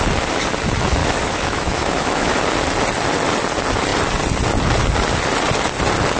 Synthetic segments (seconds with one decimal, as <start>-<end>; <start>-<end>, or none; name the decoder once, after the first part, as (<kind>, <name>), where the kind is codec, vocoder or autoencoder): 1.0-2.4 (autoencoder, DAC-VAE)

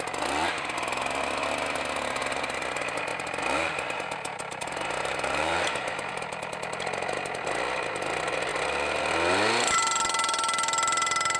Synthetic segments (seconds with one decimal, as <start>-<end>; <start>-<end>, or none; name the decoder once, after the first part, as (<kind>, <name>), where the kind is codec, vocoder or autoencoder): 3.1-6.1 (vocoder, BigVGAN v2)

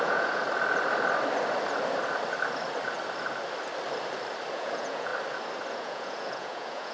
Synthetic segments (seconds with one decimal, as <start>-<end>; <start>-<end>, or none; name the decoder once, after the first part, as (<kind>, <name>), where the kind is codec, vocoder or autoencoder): 0.0-0.4 (vocoder, Vocos); 4.5-5.1; 5.7-6.9

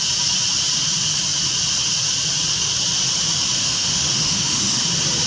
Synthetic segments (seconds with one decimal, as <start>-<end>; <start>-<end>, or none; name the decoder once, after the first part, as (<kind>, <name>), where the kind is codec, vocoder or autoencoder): 3.6-4.8 (autoencoder, DAC-VAE)

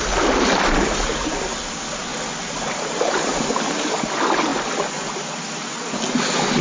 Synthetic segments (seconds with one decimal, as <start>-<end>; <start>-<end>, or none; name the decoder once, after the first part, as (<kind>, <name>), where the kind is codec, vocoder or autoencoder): none